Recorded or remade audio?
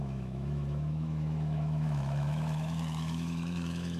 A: remade